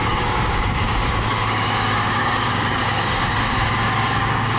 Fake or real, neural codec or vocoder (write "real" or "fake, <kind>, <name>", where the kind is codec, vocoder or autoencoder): fake, codec, DAC